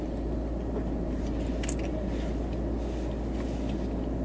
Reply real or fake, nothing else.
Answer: real